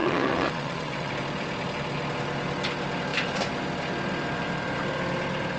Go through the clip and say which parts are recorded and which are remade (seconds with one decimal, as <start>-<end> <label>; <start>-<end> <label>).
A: 0.0-1.1 remade; 1.1-5.6 recorded